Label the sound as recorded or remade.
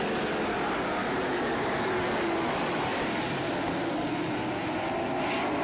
recorded